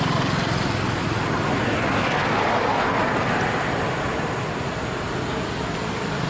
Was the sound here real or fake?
real